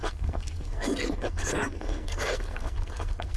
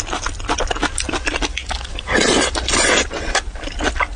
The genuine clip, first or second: second